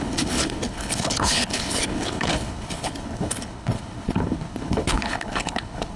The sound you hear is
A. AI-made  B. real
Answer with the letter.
A